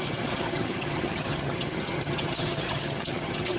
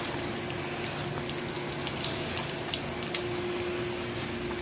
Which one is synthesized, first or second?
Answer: first